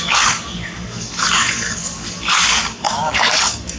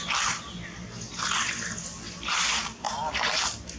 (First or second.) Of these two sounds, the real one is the second